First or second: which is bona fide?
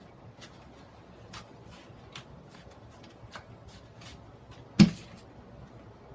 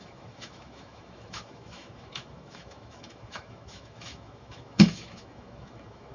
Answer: first